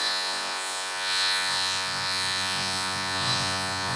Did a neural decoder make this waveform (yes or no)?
yes